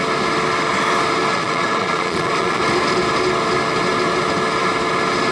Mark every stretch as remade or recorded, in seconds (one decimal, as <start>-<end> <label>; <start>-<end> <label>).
0.0-1.3 recorded; 1.3-2.6 remade; 2.6-5.3 recorded